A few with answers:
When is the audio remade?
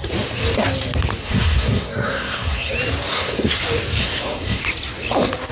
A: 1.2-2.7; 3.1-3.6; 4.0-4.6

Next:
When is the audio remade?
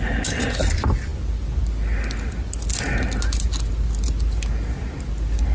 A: none